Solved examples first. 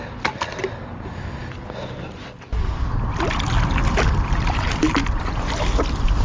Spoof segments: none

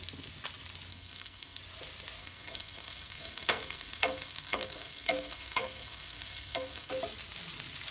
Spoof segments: 0.9-1.6 (codec, SNAC); 2.2-6.9